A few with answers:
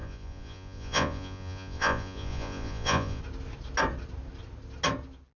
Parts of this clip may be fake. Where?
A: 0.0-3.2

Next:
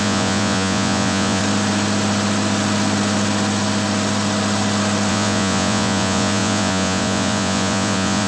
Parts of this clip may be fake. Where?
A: 0.0-1.4; 5.1-8.3

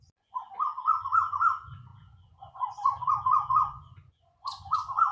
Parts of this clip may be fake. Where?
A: 0.0-5.1